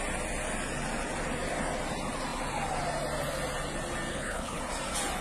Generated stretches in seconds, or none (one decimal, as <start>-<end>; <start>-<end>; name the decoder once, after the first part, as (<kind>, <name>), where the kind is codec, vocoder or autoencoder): 4.1-4.6 (codec, HILCodec)